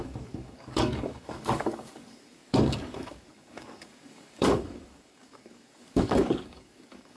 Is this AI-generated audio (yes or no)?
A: yes